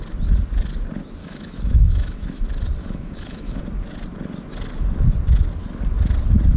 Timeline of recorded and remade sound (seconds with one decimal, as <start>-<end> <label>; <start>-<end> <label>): 0.0-1.2 recorded; 1.2-2.4 remade; 2.4-2.8 recorded; 2.8-3.6 remade; 3.6-6.6 recorded